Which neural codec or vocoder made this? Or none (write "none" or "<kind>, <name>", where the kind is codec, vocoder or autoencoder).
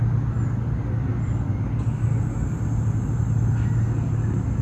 none